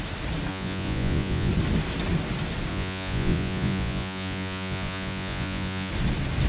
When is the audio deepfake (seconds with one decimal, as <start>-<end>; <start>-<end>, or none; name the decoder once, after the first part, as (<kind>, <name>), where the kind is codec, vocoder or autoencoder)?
0.5-1.5 (vocoder, Vocos); 2.7-5.9